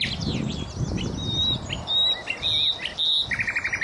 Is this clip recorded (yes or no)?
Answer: yes